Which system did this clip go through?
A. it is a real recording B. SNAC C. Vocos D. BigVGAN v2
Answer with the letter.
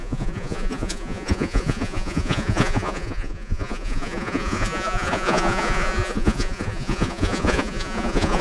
C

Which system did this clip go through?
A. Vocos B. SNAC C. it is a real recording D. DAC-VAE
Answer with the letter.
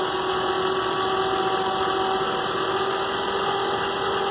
C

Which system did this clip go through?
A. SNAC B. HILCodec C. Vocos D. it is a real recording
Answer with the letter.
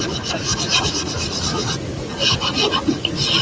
C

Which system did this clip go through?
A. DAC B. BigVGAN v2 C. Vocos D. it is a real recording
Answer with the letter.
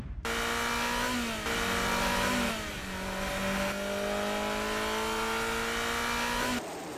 D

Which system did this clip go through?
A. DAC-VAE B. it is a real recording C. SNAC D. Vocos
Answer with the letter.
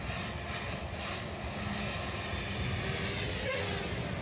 B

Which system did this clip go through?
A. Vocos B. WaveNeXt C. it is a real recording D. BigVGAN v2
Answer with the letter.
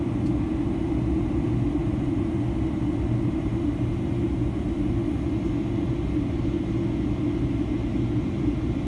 C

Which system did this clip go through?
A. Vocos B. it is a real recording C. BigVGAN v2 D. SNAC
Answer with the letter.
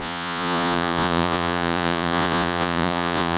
A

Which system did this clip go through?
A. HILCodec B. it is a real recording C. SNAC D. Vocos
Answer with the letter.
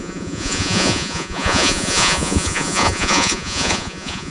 D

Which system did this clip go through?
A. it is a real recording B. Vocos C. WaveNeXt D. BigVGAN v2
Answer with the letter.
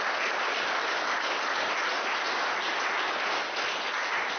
A